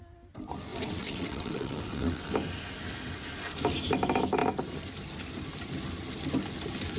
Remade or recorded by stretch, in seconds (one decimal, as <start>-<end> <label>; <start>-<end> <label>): 0.0-0.7 recorded; 0.7-2.3 remade; 2.3-7.0 recorded